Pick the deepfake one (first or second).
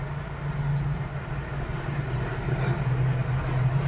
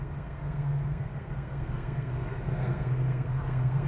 second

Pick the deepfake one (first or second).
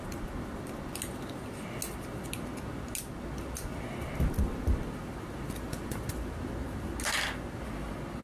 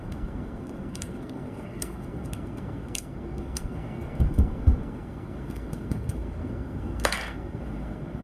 second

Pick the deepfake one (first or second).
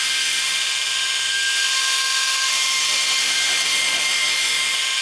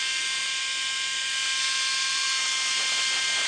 first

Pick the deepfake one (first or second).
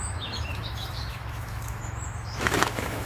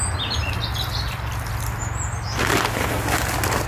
first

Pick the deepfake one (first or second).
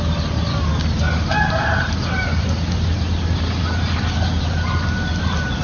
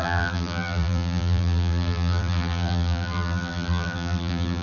second